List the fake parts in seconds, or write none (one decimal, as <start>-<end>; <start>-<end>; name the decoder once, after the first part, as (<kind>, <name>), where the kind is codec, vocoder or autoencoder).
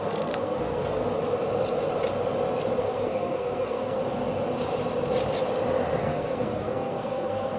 0.0-1.0 (codec, SNAC); 2.8-4.0; 6.0-7.6